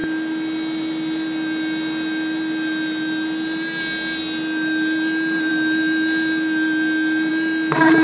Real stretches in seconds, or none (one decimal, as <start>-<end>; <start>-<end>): 0.0-8.0